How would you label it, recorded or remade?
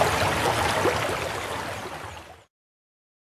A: recorded